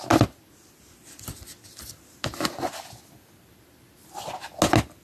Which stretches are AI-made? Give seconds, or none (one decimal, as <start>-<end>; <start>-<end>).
none